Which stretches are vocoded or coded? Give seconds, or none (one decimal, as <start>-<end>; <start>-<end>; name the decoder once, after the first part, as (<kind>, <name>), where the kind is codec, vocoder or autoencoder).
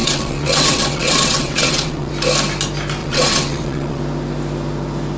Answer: 0.0-2.1 (vocoder, WaveNeXt); 3.0-4.0